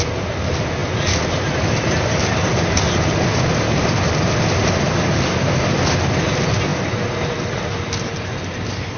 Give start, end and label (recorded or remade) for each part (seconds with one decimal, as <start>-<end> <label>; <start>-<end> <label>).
0.0-9.0 recorded